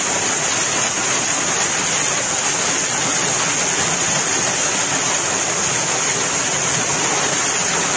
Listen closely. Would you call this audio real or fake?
real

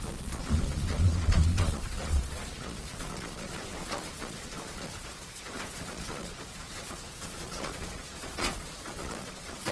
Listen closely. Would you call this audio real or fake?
fake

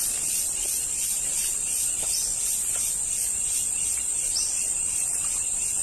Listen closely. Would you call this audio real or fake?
real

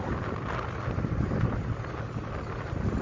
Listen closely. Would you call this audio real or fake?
real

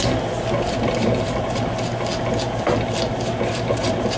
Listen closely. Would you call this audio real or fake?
real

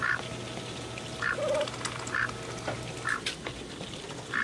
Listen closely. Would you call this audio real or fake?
real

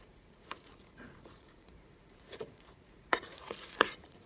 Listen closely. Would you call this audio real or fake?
fake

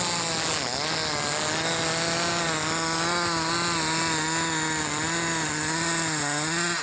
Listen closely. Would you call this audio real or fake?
real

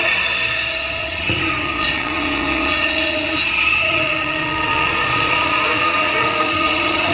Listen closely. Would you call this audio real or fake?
fake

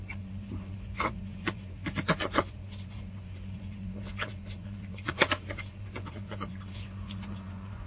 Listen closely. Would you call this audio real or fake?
fake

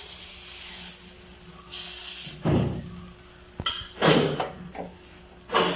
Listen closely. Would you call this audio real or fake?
real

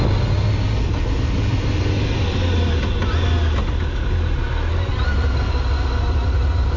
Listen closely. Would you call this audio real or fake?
real